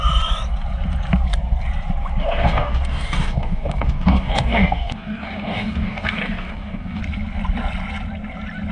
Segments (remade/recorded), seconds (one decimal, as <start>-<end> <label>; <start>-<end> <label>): 0.0-2.2 recorded; 2.2-7.0 remade; 7.0-8.7 recorded